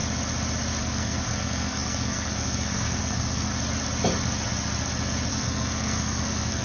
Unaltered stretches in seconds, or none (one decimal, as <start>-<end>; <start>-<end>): 0.0-0.8; 3.5-5.3